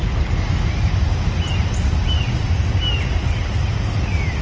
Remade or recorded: recorded